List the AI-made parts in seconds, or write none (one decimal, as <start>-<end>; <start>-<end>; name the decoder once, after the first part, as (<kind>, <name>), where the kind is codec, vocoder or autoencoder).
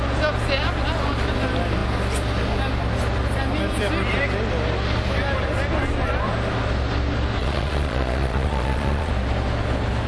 7.4-9.1 (vocoder, Vocos)